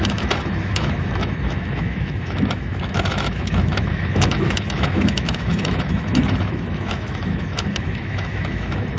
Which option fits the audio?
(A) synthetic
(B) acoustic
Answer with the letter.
A